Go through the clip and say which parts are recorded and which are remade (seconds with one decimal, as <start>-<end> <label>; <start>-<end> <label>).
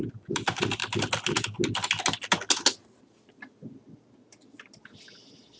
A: 0.0-0.8 remade; 0.8-3.0 recorded; 3.0-5.6 remade